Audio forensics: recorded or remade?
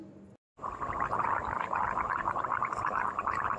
recorded